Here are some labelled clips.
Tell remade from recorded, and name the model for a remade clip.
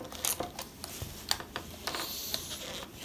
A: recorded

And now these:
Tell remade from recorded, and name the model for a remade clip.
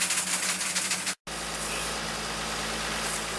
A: recorded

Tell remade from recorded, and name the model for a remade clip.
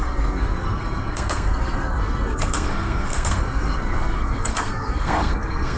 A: remade, codec, SNAC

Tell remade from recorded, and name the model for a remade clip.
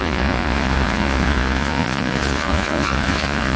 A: remade, vocoder, Vocos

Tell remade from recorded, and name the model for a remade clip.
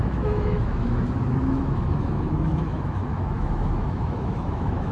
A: remade, autoencoder, DAC-VAE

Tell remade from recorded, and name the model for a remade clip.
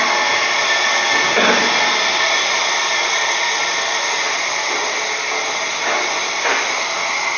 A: recorded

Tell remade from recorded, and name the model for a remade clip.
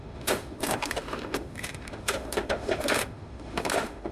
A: remade, autoencoder, DAC-VAE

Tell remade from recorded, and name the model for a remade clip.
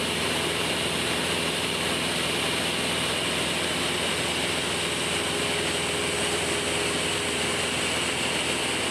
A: recorded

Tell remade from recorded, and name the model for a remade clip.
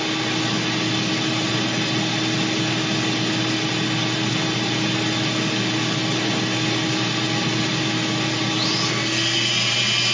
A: recorded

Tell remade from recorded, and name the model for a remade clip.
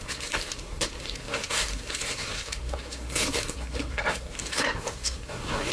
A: remade, codec, SNAC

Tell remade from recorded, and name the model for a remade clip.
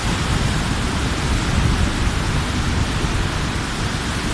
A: recorded